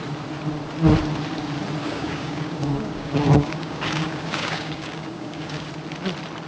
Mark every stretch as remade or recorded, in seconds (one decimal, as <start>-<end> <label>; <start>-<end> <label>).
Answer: 0.0-1.8 recorded; 1.8-5.7 remade; 5.7-6.5 recorded